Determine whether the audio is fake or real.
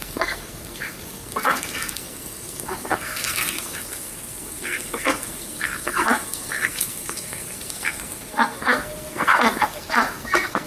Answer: fake